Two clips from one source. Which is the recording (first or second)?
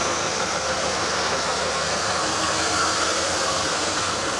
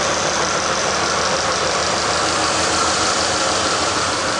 second